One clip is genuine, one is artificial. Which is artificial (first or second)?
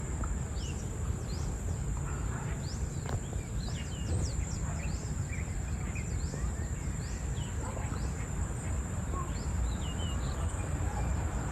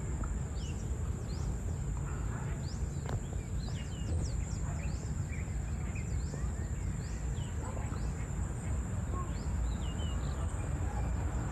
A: first